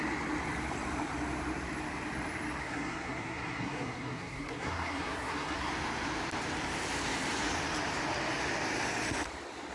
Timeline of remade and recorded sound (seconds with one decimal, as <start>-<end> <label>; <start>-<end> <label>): 0.0-2.6 recorded; 2.6-5.7 remade; 5.7-9.7 recorded

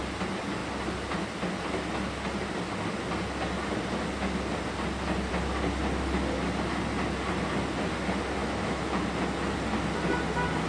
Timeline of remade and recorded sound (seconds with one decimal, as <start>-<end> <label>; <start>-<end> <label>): 0.0-8.4 recorded; 8.4-9.1 remade; 9.1-10.7 recorded